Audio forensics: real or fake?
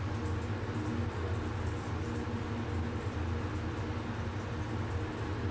real